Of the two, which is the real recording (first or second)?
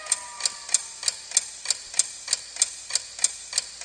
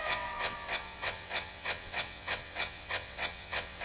first